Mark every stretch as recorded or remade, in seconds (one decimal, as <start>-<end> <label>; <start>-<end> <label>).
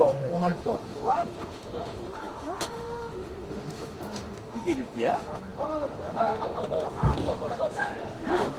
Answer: 0.0-8.6 remade